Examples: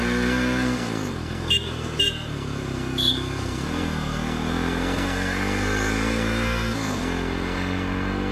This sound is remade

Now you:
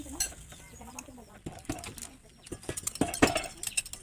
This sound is recorded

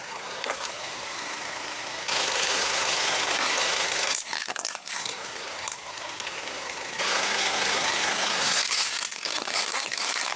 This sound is remade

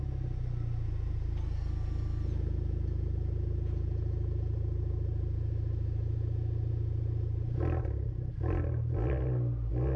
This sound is recorded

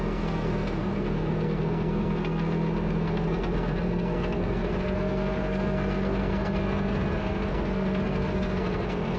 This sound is remade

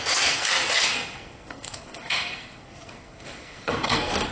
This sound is remade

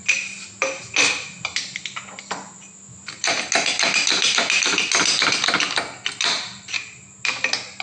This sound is recorded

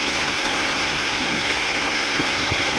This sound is remade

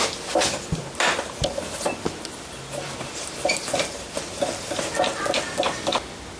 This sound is recorded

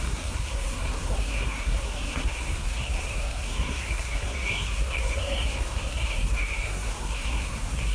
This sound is remade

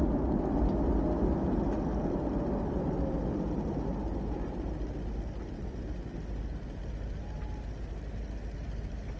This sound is recorded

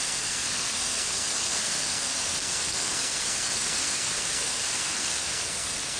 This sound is remade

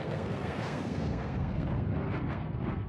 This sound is remade